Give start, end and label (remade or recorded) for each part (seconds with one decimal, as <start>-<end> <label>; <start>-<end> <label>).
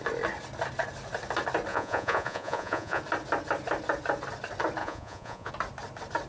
0.0-1.7 recorded; 1.7-3.0 remade; 3.0-4.8 recorded; 4.8-5.5 remade; 5.5-6.3 recorded